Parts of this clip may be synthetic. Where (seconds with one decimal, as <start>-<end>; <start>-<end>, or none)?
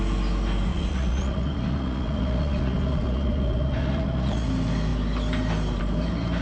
0.7-4.5